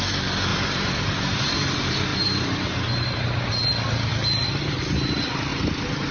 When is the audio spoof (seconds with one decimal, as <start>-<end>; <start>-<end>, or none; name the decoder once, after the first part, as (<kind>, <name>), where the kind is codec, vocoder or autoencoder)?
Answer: 0.5-1.4 (vocoder, BigVGAN v2); 2.1-3.5

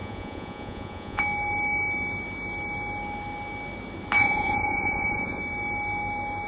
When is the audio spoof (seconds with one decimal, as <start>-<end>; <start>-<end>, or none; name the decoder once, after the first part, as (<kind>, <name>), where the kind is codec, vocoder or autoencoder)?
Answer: 0.0-1.2 (vocoder, Vocos); 4.2-5.4

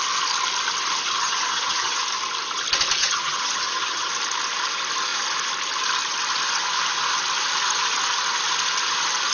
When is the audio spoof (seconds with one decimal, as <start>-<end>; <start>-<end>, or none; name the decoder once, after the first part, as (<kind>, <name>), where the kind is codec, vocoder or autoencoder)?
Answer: 1.2-2.0 (vocoder, HiFi-GAN); 3.0-4.1

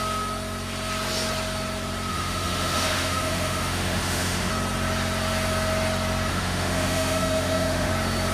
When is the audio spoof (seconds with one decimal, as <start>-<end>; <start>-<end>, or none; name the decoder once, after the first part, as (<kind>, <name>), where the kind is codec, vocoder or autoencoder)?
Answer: 2.1-4.5 (autoencoder, DAC-VAE); 6.3-7.9

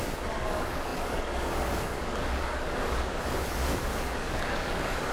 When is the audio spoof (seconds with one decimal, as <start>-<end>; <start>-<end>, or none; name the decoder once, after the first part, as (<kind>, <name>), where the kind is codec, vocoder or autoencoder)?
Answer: 0.0-5.1 (codec, DAC)

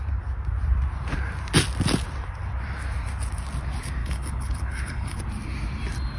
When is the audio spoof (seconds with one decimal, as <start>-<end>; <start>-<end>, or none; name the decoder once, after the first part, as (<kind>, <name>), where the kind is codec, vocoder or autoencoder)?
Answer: 4.0-5.2 (codec, HILCodec)

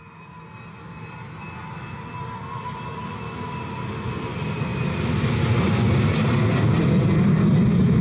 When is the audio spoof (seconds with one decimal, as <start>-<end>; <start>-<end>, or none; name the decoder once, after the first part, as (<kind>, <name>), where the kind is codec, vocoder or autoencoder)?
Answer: none

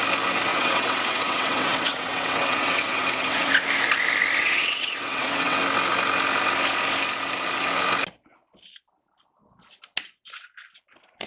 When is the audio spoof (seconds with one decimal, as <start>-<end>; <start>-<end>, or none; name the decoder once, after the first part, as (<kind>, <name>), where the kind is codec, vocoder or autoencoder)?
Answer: 0.5-3.5 (vocoder, WaveNeXt); 4.4-5.6